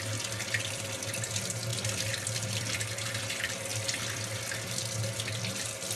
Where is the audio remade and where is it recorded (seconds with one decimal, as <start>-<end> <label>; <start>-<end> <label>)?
0.0-6.0 recorded